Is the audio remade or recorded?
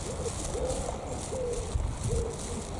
recorded